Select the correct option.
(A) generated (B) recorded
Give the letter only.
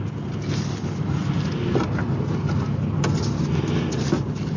B